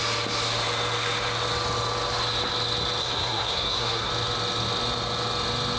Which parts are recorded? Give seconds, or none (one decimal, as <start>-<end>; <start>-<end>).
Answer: 0.0-3.0; 4.1-5.8